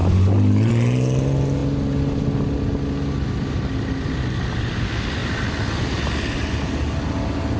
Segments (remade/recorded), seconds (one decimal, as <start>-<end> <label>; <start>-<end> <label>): 0.0-7.6 recorded